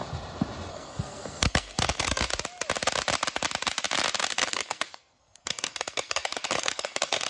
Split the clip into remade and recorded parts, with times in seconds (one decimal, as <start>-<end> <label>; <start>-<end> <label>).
0.0-0.7 recorded; 0.7-2.3 remade; 2.3-4.3 recorded; 4.3-7.3 remade